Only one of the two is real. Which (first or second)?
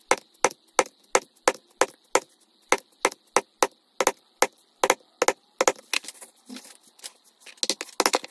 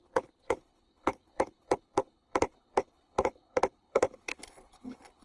first